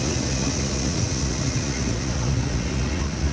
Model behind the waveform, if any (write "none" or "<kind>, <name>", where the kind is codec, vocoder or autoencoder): vocoder, Vocos